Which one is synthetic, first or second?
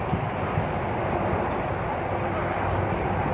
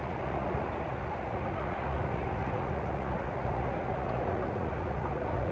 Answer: second